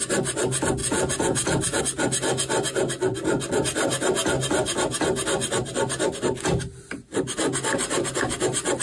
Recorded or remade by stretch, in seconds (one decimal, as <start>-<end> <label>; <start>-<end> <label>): 0.0-0.8 recorded; 0.8-1.8 remade; 1.8-8.8 recorded